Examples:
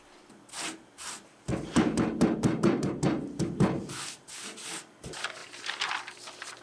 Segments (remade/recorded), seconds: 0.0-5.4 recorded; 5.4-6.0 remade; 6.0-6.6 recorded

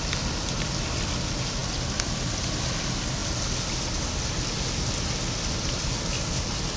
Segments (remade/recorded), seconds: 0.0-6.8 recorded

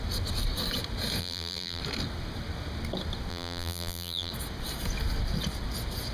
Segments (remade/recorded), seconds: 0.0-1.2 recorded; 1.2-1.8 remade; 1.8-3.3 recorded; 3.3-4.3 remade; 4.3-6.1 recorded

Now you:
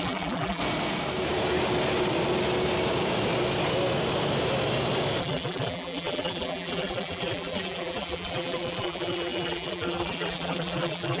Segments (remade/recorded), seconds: 0.0-0.6 remade; 0.6-5.2 recorded; 5.2-11.2 remade

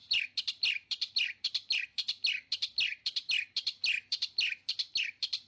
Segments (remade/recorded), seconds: 0.0-5.5 remade

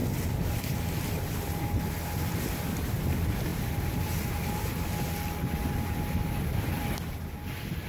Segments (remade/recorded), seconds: 0.0-7.9 recorded